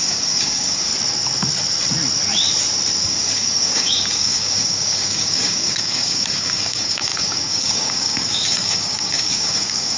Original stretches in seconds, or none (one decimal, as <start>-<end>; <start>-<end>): 0.9-3.0